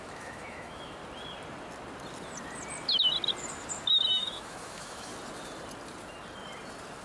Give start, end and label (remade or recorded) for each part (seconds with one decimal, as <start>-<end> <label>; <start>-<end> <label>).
0.0-1.0 remade; 1.0-3.9 recorded; 3.9-5.1 remade; 5.1-7.0 recorded

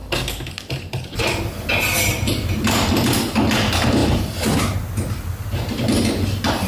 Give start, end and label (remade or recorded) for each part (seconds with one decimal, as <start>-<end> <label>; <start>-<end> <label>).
0.0-6.7 recorded

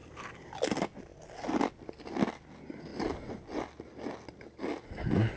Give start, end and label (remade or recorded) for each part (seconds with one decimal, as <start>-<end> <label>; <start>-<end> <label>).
0.0-0.6 remade; 0.6-5.4 recorded

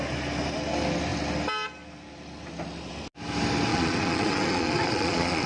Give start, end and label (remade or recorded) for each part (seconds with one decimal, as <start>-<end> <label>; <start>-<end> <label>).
0.0-3.7 recorded; 3.7-5.5 remade

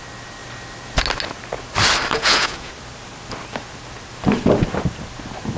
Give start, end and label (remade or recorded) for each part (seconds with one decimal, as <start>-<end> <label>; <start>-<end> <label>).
0.0-2.1 recorded; 2.1-2.7 remade; 2.7-5.6 recorded

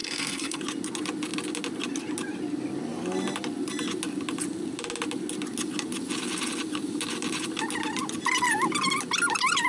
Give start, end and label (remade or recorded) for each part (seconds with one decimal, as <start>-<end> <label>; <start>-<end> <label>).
0.0-0.6 remade; 0.6-9.7 recorded

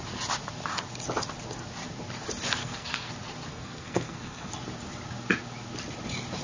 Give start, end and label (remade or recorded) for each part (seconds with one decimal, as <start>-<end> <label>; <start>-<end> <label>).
0.0-2.6 recorded; 2.6-3.1 remade; 3.1-3.5 recorded; 3.5-4.5 remade; 4.5-6.4 recorded